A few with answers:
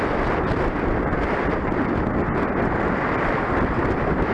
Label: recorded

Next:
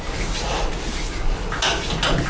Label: recorded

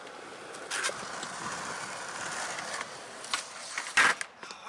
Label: recorded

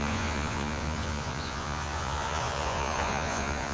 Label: remade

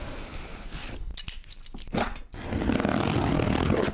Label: recorded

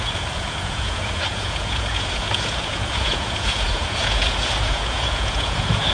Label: remade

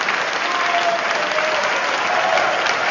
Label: recorded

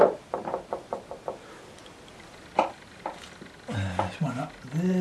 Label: recorded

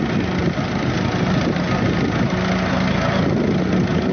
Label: recorded